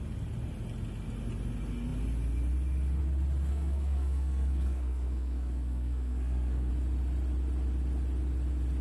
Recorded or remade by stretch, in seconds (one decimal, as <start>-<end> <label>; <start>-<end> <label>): 0.0-3.5 recorded; 3.5-6.7 remade; 6.7-8.8 recorded